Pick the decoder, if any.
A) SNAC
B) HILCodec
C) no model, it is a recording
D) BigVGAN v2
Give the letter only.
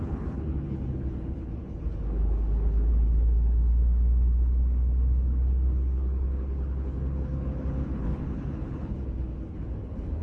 B